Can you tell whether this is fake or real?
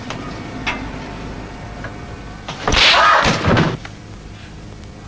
real